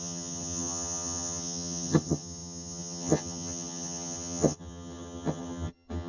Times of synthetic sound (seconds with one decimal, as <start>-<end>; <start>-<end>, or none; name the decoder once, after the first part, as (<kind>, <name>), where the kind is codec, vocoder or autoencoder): 0.0-6.1 (vocoder, HiFi-GAN)